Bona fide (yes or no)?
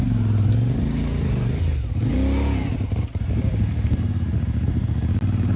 yes